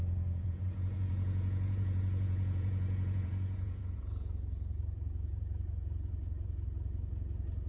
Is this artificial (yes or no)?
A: yes